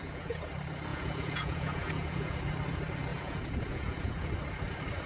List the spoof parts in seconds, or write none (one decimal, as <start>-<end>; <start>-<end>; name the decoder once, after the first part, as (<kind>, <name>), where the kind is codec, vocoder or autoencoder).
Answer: 0.0-0.5 (vocoder, Vocos); 0.9-2.4; 3.1-4.3